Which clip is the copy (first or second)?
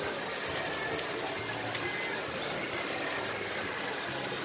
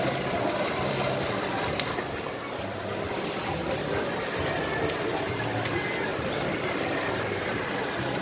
second